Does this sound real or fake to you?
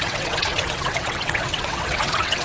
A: fake